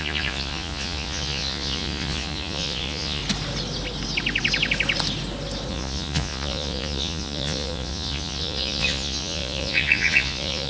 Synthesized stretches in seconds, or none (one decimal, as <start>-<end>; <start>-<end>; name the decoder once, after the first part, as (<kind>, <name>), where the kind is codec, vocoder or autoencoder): 0.0-3.2 (vocoder, Vocos); 5.7-10.7